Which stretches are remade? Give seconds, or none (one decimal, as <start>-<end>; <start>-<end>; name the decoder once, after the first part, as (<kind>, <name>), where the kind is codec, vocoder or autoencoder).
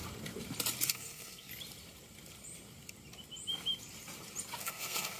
0.9-1.5 (codec, SNAC); 4.6-5.2